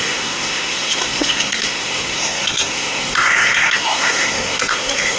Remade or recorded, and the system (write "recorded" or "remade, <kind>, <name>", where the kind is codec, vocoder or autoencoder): remade, codec, SNAC